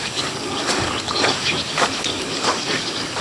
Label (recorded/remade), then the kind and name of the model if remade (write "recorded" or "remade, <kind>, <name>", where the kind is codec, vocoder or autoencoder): remade, codec, DAC